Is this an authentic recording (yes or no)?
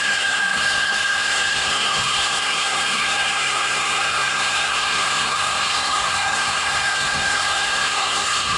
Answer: no